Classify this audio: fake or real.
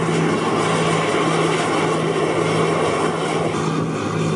real